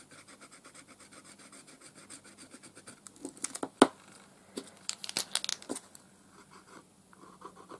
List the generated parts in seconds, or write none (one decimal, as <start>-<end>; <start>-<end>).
4.4-5.1